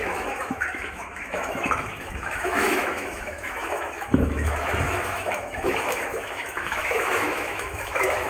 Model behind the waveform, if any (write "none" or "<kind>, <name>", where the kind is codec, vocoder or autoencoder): autoencoder, DAC-VAE